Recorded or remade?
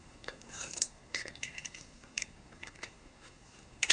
remade